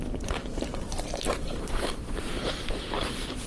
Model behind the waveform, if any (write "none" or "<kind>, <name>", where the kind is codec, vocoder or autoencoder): vocoder, BigVGAN v2